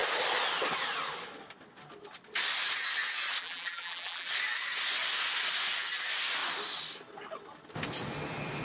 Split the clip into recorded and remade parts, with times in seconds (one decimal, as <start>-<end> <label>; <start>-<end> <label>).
0.0-3.4 recorded; 3.4-4.3 remade; 4.3-8.6 recorded